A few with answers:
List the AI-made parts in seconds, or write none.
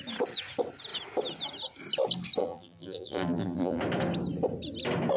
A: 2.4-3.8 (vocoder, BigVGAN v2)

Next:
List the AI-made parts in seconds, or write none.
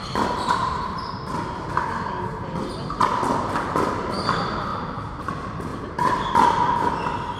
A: 0.0-1.7 (vocoder, BigVGAN v2); 4.7-5.3; 5.7-6.3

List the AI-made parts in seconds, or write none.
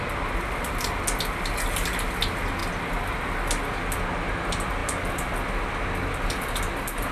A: none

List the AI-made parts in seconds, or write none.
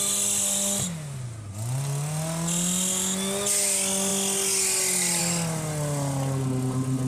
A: none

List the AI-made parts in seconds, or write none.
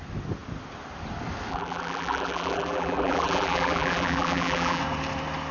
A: 1.5-4.8 (vocoder, BigVGAN v2)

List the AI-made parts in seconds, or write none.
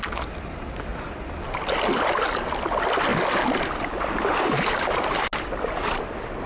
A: 0.9-1.7 (vocoder, BigVGAN v2)